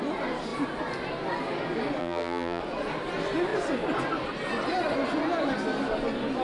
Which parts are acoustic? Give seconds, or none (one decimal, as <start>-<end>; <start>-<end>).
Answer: 0.0-2.0; 2.6-6.4